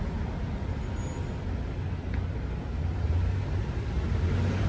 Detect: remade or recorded recorded